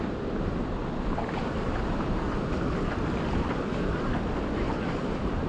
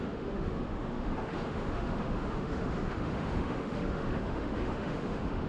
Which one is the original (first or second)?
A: first